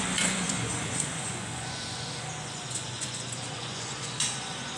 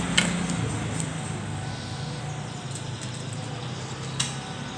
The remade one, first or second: first